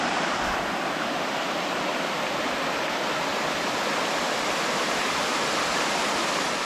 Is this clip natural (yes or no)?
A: yes